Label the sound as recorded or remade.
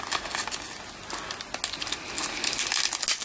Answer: recorded